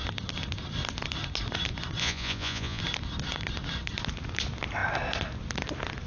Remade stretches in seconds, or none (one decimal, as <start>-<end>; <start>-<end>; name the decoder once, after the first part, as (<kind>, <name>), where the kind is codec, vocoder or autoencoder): 2.0-2.8 (vocoder, Vocos)